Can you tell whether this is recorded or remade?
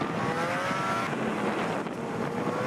recorded